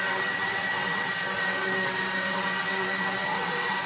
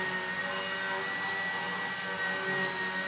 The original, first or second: second